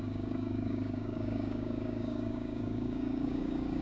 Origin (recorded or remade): remade